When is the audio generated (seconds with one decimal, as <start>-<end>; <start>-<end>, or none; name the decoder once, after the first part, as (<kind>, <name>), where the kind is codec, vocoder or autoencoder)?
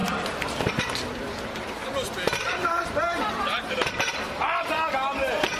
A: 0.0-0.8 (vocoder, BigVGAN v2); 2.6-4.2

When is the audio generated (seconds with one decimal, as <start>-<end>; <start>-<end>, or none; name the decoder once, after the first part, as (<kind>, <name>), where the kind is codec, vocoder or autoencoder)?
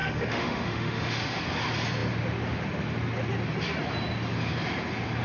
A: 0.0-1.4 (autoencoder, DAC-VAE)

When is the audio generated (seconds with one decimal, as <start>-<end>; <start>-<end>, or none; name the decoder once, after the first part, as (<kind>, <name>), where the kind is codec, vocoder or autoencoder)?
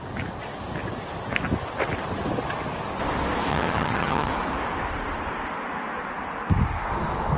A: 3.5-4.3 (vocoder, HiFi-GAN)